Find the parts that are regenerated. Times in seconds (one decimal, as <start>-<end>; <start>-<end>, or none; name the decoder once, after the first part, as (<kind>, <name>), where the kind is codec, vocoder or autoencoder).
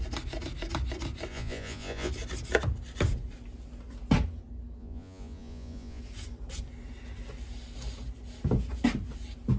1.3-2.1 (vocoder, Vocos); 4.8-6.0